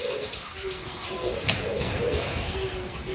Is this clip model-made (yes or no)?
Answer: yes